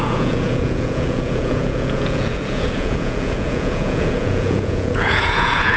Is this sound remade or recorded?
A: remade